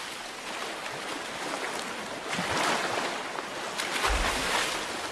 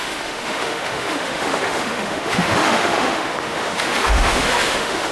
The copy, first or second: second